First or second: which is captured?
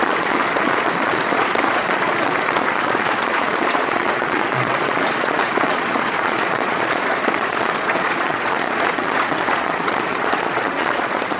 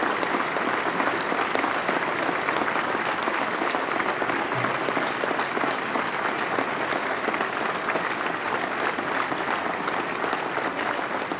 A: second